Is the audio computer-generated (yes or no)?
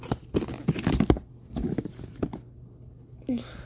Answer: no